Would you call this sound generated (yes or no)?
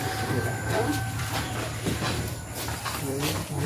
yes